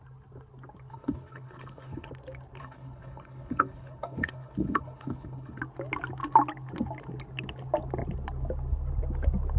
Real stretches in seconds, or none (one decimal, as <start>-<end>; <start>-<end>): 0.0-0.9; 2.1-2.6; 5.6-9.6